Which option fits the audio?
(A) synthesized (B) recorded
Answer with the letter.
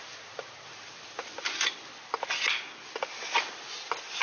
B